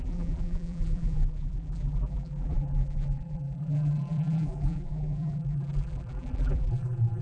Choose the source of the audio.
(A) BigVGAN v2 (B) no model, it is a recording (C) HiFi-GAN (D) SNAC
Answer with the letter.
A